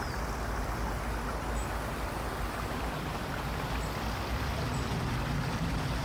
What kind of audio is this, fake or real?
real